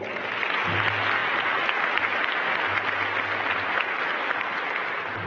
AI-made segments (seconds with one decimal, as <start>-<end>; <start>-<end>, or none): 1.2-2.0